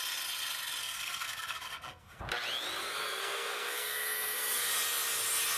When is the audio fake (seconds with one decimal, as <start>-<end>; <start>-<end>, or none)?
0.8-2.2; 2.8-4.7